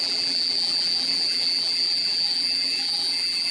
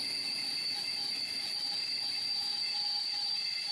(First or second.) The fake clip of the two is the first